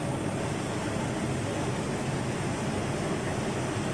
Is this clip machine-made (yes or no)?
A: no